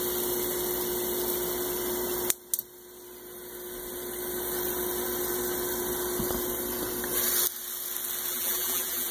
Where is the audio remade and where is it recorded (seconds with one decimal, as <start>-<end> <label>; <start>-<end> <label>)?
0.0-8.3 recorded; 8.3-9.1 remade